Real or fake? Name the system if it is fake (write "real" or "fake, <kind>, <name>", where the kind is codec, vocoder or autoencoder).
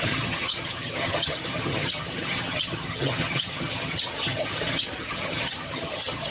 fake, vocoder, HiFi-GAN